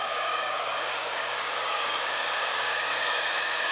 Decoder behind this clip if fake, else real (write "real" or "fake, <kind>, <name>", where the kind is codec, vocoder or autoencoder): fake, codec, DAC